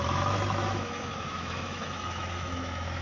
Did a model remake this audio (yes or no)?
yes